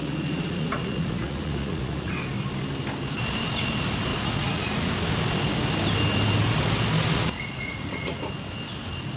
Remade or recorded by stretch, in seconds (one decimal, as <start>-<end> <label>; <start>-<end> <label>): 0.0-2.1 remade; 2.1-4.1 recorded; 4.1-4.9 remade; 4.9-7.1 recorded; 7.1-8.3 remade; 8.3-9.2 recorded